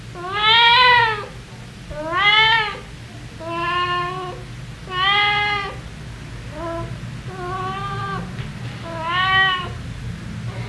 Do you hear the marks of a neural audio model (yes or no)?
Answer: no